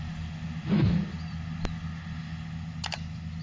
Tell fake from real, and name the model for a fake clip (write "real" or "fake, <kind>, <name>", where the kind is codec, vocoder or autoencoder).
real